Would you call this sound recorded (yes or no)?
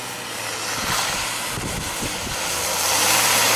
yes